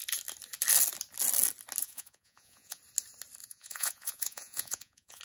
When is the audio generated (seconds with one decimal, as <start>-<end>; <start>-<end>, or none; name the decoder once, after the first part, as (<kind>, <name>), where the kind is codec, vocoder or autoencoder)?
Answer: 1.8-2.8 (vocoder, Vocos); 3.4-5.2